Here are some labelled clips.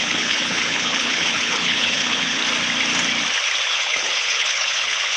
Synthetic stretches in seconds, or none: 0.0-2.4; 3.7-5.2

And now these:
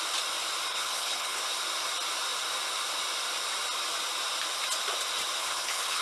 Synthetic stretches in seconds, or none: 0.7-1.4; 5.4-6.0